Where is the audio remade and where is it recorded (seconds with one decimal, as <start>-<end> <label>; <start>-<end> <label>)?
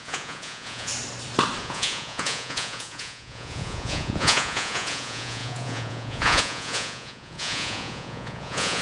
0.0-0.9 remade; 0.9-1.6 recorded; 1.6-8.8 remade